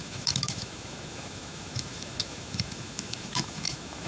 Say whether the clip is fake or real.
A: fake